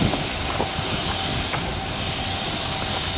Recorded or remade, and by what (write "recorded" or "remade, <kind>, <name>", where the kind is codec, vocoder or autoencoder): recorded